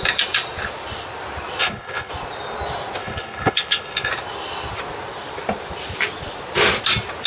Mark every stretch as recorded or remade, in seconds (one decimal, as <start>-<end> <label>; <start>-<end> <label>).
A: 0.0-1.6 recorded; 1.6-2.1 remade; 2.1-3.0 recorded; 3.0-4.1 remade; 4.1-7.3 recorded